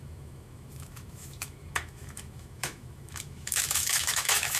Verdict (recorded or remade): remade